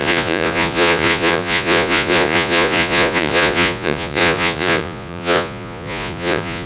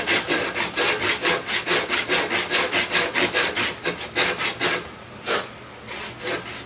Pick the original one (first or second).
second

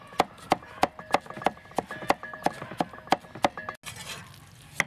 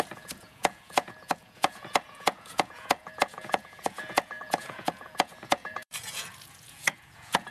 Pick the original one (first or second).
first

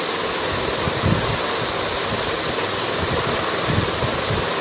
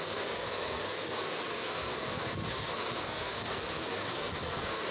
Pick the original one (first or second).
first